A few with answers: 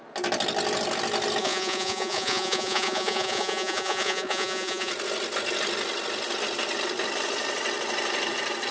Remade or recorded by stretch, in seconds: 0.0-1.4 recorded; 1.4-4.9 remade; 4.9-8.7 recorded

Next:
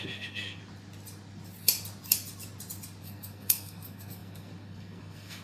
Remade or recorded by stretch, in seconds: 0.0-0.6 remade; 0.6-3.0 recorded; 3.0-5.4 remade

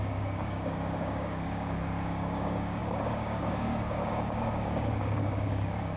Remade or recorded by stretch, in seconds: 0.0-6.0 remade

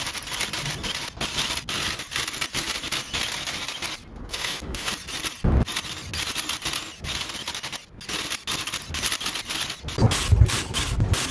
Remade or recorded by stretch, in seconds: 0.0-4.3 recorded; 4.3-4.9 remade; 4.9-11.3 recorded

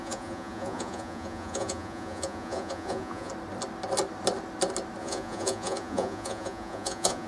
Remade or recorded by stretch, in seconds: 0.0-3.3 remade; 3.3-5.0 recorded; 5.0-7.3 remade

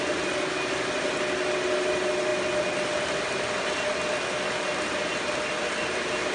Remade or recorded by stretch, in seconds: 0.0-6.3 recorded

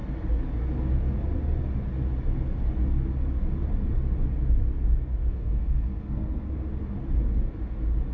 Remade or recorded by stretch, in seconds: 0.0-5.2 recorded; 5.2-6.5 remade; 6.5-8.1 recorded

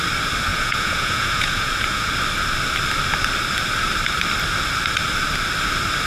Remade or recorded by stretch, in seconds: 0.0-0.5 recorded; 0.5-2.1 remade; 2.1-6.1 recorded